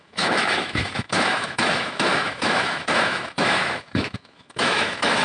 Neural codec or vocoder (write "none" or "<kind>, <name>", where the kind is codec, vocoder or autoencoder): autoencoder, DAC-VAE